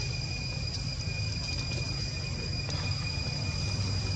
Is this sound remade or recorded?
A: recorded